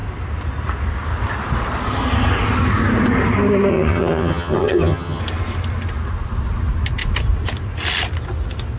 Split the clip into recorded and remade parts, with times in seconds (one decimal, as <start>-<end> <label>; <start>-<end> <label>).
0.0-3.7 recorded; 3.7-5.2 remade; 5.2-8.8 recorded